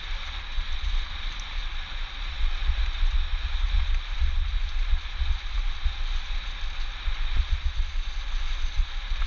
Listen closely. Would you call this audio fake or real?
real